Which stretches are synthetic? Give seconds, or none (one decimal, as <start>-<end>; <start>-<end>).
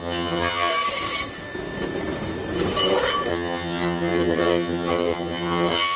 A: 0.0-0.7; 3.3-6.0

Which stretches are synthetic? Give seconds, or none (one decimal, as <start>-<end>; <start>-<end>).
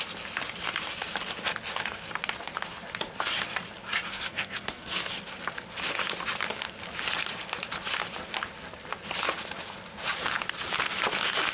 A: 4.1-5.1